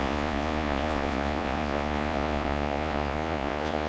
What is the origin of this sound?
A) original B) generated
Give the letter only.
B